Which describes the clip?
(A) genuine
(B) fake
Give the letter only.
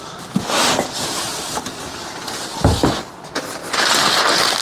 A